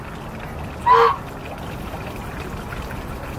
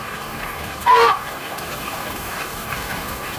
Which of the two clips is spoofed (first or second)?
second